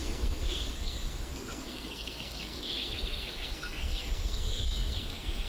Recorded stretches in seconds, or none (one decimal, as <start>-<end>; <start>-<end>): none